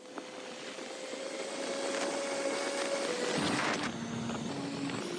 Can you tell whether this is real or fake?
real